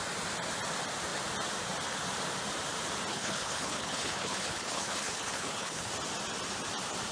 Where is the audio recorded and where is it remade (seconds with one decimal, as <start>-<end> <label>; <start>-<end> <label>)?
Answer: 0.0-3.1 recorded; 3.1-5.9 remade; 5.9-7.1 recorded